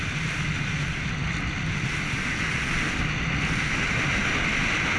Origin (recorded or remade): recorded